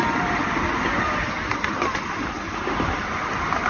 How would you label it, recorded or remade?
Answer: recorded